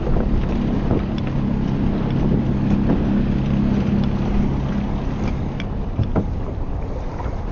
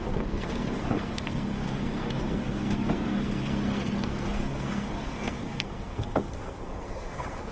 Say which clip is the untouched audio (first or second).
first